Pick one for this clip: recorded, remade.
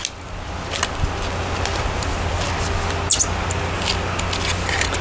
recorded